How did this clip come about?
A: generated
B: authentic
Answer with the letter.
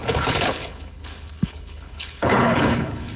A